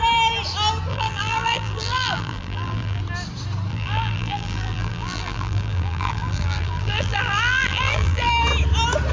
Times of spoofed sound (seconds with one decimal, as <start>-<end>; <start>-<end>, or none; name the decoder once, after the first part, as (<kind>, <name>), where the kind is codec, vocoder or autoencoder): 0.9-3.0 (vocoder, BigVGAN v2); 3.7-8.3